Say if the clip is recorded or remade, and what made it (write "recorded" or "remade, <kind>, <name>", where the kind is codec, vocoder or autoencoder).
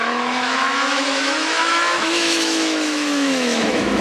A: remade, autoencoder, DAC-VAE